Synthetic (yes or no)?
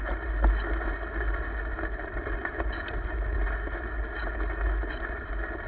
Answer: no